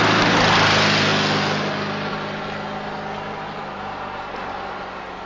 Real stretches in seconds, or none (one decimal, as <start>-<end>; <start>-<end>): 0.0-5.3